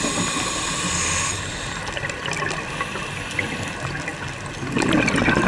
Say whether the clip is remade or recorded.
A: recorded